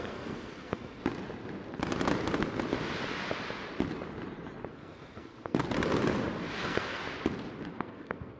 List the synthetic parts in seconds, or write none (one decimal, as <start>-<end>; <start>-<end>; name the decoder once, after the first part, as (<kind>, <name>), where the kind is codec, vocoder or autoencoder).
0.0-1.0 (codec, SNAC); 4.7-5.6; 6.6-7.0; 7.7-8.4